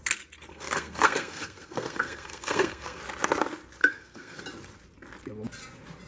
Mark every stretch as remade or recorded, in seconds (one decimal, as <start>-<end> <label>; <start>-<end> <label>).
0.0-0.5 recorded; 0.5-3.0 remade; 3.0-3.8 recorded; 3.8-4.4 remade; 4.4-6.1 recorded